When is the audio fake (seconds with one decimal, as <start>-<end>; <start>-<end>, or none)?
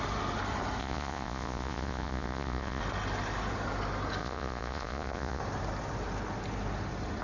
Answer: 0.8-2.8; 4.2-5.4